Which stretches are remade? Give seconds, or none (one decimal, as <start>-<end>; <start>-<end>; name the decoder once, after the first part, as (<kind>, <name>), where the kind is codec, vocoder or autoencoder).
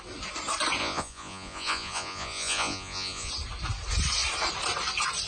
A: 0.8-3.3 (vocoder, Vocos)